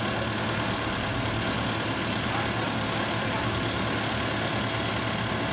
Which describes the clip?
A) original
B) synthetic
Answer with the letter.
A